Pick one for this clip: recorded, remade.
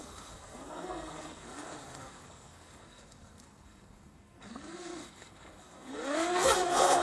remade